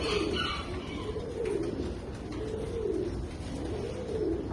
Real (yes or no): no